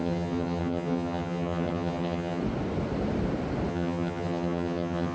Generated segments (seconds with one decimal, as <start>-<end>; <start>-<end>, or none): 0.0-2.4; 3.7-5.1